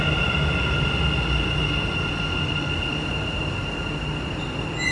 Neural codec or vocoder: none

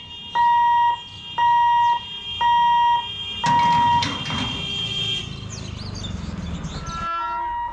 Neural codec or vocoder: none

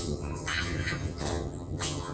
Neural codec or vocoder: vocoder, HiFi-GAN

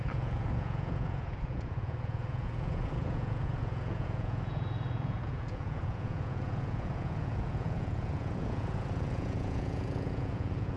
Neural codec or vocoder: vocoder, Vocos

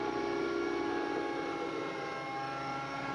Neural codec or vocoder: none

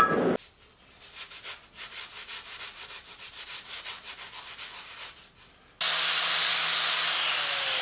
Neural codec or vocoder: none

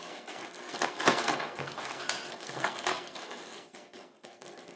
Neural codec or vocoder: codec, SNAC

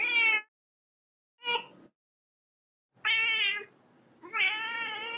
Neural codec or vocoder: none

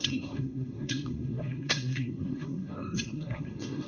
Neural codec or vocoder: codec, SNAC